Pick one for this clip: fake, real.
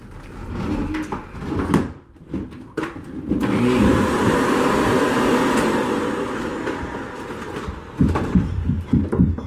real